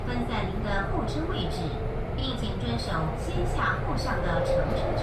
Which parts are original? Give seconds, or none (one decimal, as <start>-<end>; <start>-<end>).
0.0-5.0